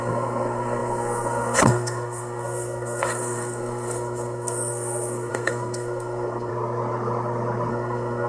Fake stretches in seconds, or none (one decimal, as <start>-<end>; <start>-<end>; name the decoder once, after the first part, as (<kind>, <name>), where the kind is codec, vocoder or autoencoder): 0.0-6.5 (codec, SNAC); 7.7-8.3